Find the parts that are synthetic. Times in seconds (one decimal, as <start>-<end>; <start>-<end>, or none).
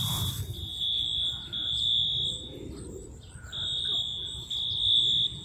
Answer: none